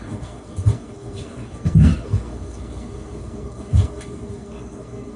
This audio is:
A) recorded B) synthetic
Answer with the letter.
B